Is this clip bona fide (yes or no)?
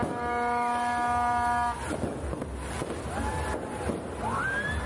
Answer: yes